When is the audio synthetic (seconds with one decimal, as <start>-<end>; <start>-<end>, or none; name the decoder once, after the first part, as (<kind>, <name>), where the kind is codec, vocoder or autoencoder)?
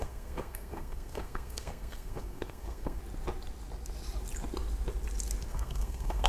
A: 0.0-3.0 (codec, SNAC); 5.5-6.3